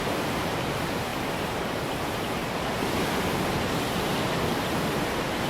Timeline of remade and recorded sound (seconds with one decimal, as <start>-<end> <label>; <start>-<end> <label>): 0.0-1.1 remade; 1.1-2.0 recorded; 2.0-2.4 remade; 2.4-4.5 recorded; 4.5-5.5 remade